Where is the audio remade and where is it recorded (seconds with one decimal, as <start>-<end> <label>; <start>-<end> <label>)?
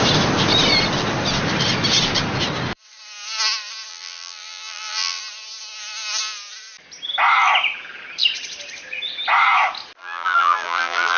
0.0-3.9 recorded; 3.9-5.2 remade; 5.2-10.0 recorded; 10.0-11.2 remade